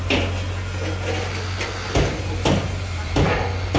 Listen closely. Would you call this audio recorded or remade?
recorded